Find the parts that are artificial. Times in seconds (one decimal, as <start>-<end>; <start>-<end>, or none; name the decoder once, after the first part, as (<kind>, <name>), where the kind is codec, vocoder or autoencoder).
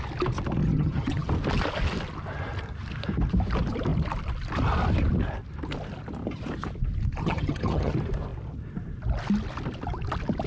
0.6-1.3 (vocoder, HiFi-GAN); 7.2-7.9